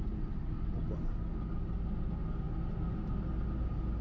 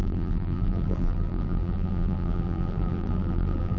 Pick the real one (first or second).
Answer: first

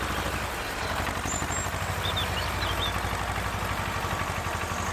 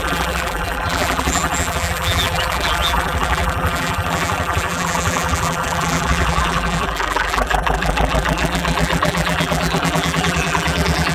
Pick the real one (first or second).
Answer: first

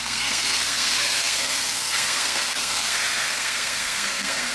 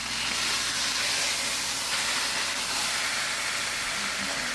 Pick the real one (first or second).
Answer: second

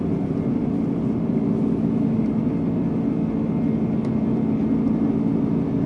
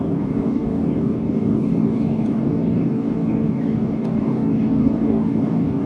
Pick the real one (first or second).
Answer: first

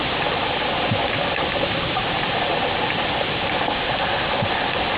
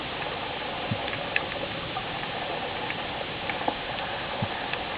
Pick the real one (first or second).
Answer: second